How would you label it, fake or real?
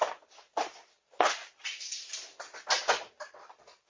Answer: real